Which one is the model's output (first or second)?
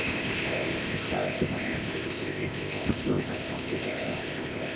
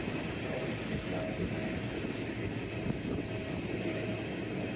first